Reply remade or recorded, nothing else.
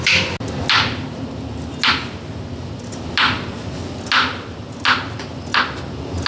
recorded